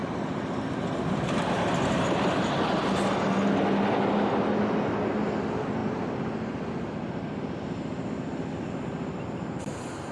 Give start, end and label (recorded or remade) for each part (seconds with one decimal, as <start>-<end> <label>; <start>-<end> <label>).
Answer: 0.0-10.1 recorded